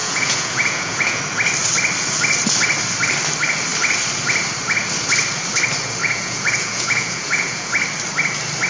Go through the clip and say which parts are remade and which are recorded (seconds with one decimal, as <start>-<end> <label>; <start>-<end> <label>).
0.0-1.2 remade; 1.2-6.0 recorded; 6.0-7.7 remade; 7.7-8.7 recorded